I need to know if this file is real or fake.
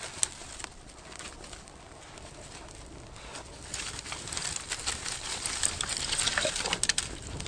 real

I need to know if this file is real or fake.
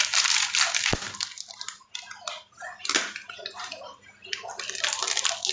real